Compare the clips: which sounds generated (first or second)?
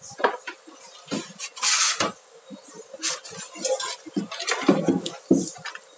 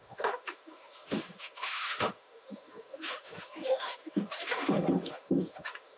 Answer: second